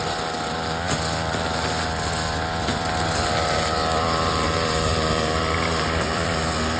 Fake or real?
fake